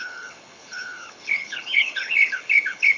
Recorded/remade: remade